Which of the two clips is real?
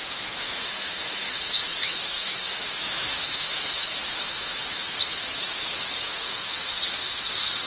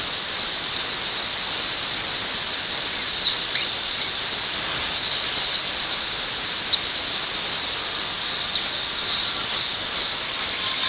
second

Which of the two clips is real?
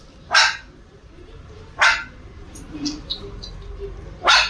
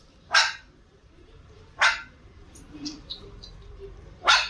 first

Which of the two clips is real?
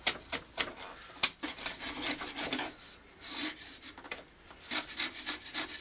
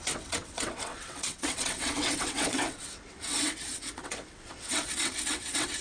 first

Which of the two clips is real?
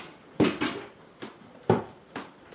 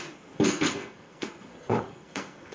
first